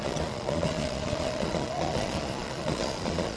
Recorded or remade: remade